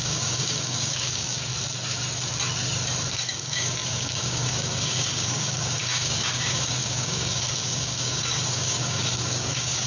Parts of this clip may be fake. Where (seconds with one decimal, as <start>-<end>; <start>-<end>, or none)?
0.0-1.5; 3.1-9.9